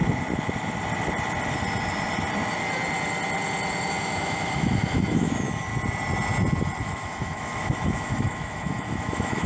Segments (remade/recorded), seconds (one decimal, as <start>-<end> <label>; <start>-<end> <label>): 0.0-3.9 recorded; 3.9-5.7 remade; 5.7-6.8 recorded; 6.8-9.5 remade